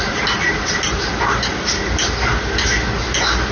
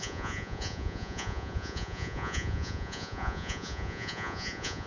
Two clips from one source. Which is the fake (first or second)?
second